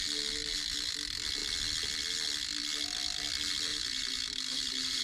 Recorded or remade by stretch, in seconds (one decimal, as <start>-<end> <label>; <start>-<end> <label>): 0.0-3.7 recorded; 3.7-5.0 remade